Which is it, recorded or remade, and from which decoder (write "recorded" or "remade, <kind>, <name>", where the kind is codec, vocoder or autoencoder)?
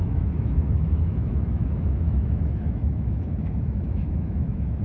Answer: remade, autoencoder, DAC-VAE